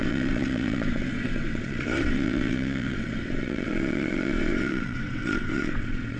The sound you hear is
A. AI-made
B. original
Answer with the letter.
A